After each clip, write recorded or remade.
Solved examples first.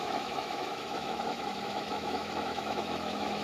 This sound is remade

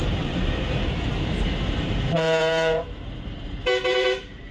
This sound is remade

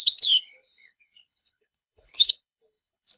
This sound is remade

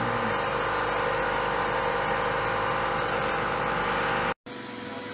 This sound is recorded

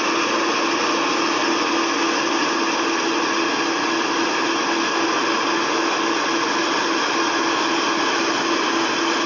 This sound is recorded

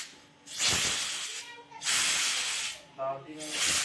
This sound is recorded